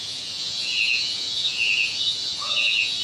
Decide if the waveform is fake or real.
fake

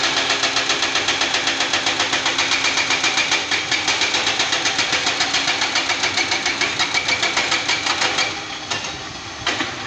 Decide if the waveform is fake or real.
real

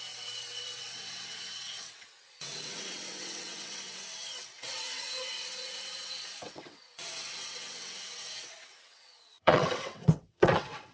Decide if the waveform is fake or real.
fake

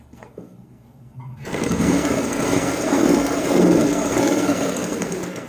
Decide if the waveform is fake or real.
fake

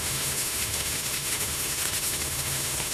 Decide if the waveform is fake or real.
fake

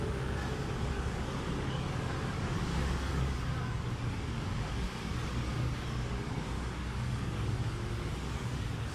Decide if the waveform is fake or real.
fake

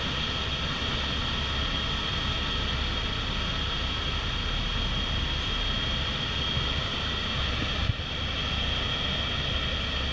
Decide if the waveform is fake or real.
real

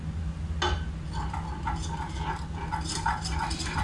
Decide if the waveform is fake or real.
real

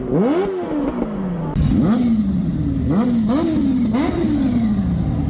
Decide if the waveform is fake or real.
real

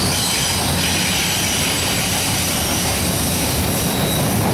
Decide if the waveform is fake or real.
real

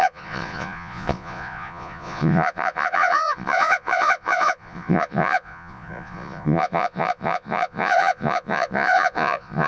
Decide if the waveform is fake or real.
fake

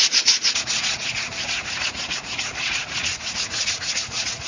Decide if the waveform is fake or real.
fake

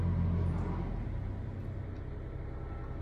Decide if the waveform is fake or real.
real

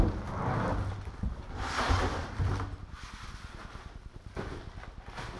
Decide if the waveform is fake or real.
real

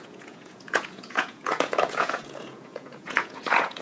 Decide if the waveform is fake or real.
fake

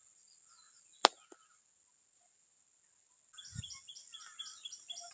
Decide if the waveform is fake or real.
real